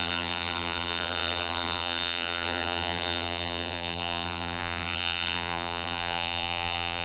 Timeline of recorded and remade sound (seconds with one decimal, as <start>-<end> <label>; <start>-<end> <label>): 0.0-7.0 remade